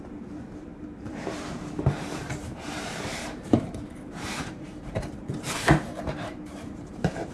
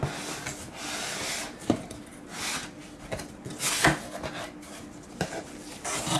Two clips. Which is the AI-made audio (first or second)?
first